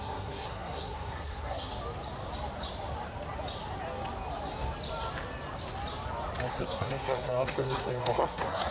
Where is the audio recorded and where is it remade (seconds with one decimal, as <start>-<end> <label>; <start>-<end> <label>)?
0.0-1.7 remade; 1.7-6.5 recorded; 6.5-8.7 remade